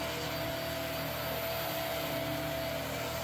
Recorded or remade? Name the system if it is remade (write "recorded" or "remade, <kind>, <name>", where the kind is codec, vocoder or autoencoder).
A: recorded